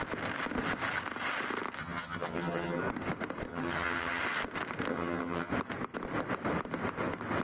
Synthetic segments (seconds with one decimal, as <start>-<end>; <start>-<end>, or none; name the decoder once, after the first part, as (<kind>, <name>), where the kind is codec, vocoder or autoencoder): 1.8-2.8 (vocoder, HiFi-GAN); 3.5-4.2; 4.9-5.5